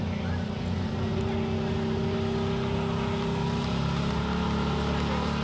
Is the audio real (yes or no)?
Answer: yes